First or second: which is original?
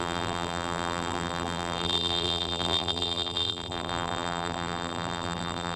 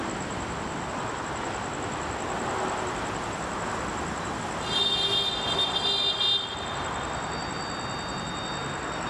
second